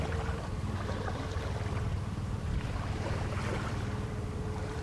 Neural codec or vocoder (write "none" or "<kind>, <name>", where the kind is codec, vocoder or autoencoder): vocoder, BigVGAN v2